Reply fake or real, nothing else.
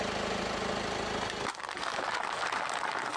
real